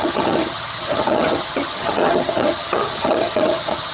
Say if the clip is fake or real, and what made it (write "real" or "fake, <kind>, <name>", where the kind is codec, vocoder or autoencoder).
fake, vocoder, HiFi-GAN